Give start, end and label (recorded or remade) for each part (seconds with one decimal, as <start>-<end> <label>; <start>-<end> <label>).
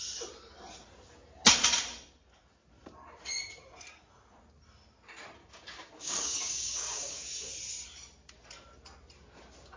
0.0-5.4 recorded; 5.4-7.5 remade; 7.5-9.8 recorded